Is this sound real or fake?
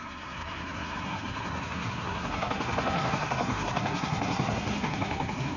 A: fake